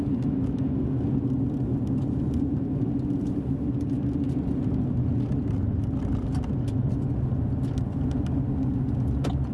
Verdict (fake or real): real